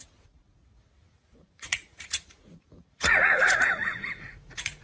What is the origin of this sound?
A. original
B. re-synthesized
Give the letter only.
B